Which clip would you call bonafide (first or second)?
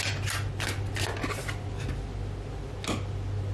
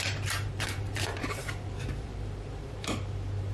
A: first